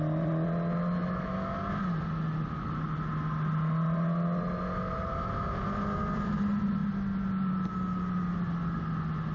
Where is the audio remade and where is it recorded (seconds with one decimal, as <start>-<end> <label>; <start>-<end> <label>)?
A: 0.0-9.3 recorded